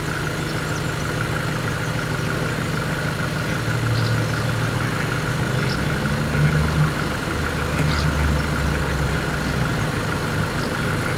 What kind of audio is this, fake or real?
real